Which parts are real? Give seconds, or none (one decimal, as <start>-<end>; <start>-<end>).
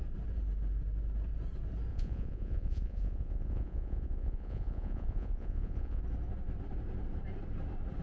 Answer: 0.0-1.9; 6.0-8.0